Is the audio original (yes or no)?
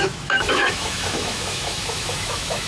no